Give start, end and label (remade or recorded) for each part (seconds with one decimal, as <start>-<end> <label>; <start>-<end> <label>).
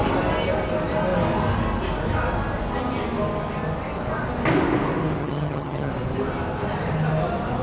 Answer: 0.0-5.2 recorded; 5.2-5.9 remade; 5.9-7.6 recorded